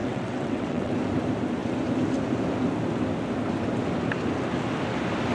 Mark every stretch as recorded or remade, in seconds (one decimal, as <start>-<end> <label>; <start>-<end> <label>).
0.0-0.9 remade; 0.9-5.3 recorded